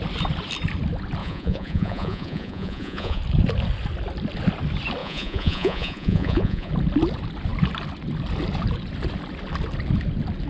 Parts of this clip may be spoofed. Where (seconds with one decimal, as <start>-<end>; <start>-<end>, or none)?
1.2-3.2; 5.0-6.7